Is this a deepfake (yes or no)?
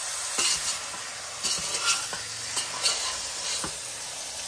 no